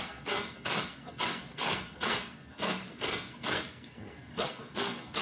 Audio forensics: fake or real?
fake